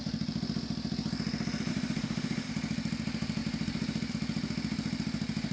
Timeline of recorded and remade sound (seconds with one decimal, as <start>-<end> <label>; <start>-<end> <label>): 0.0-1.7 recorded; 1.7-2.5 remade; 2.5-5.5 recorded